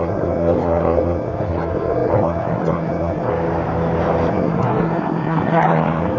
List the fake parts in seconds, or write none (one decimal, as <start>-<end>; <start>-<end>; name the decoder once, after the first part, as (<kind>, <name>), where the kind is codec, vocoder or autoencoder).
0.0-3.3 (codec, SNAC); 4.3-6.2